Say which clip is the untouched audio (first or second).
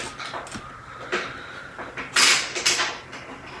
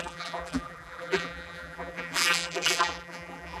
first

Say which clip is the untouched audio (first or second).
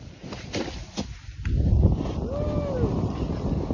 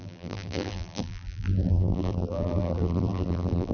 first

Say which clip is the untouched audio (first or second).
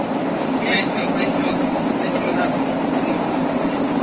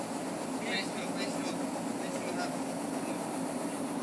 second